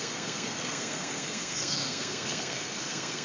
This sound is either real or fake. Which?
fake